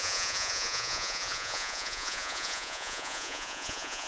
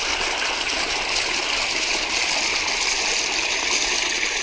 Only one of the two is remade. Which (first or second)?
first